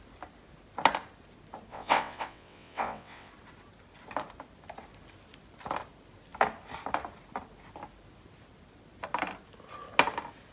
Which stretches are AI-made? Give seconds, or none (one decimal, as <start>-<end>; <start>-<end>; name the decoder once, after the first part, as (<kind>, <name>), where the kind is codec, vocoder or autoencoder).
1.7-3.3 (vocoder, WaveNeXt)